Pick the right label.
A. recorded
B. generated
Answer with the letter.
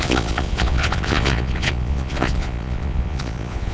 B